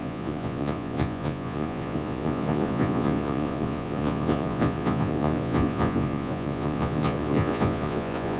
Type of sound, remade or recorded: remade